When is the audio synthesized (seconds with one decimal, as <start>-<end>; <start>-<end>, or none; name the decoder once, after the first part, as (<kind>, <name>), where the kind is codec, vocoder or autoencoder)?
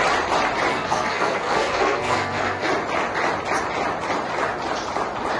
0.7-2.7 (codec, SNAC)